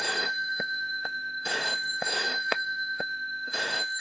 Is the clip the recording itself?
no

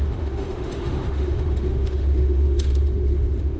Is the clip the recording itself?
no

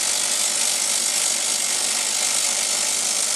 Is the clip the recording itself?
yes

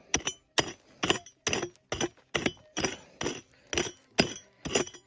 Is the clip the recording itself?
yes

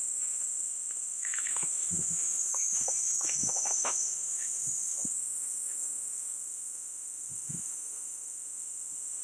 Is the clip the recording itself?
no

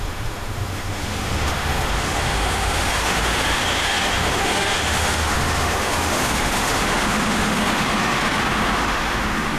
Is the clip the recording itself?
no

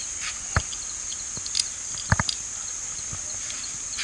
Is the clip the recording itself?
yes